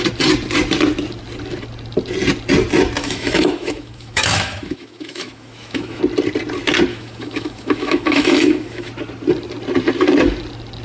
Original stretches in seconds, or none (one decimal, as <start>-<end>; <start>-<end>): 0.0-3.0; 6.0-6.9; 8.9-10.8